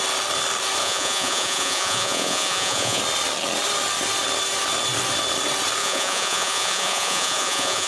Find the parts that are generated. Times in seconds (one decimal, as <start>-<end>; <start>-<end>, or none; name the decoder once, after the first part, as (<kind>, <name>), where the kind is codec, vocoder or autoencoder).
0.8-3.0 (vocoder, Vocos); 5.8-7.9